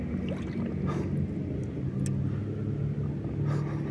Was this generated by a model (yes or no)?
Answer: no